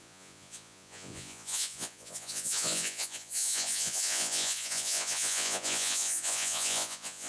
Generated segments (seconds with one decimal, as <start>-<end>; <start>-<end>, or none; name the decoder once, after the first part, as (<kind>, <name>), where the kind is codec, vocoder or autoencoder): 0.0-7.3 (vocoder, Vocos)